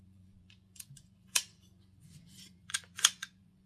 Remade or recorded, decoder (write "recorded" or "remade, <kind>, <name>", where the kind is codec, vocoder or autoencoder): remade, vocoder, Vocos